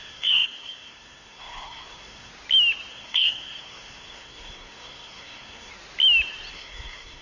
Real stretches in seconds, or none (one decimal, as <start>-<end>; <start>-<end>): 2.3-2.9; 5.7-6.5